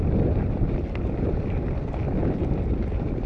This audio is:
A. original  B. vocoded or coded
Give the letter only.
A